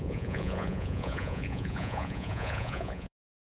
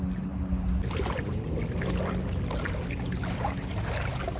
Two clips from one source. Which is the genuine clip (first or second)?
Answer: second